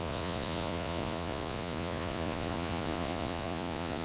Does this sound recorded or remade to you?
remade